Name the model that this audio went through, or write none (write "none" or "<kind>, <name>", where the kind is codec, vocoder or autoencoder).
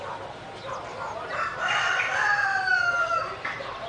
none